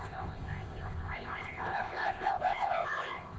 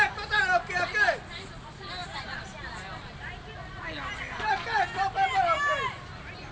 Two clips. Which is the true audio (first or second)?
second